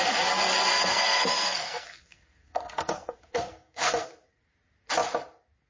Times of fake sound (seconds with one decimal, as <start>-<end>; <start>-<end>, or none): 0.7-4.1